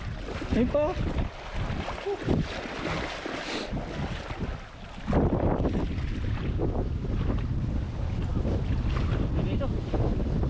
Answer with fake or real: real